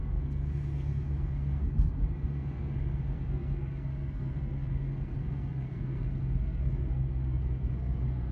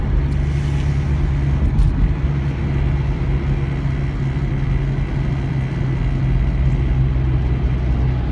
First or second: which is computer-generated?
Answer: first